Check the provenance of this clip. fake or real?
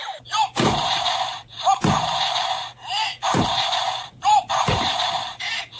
fake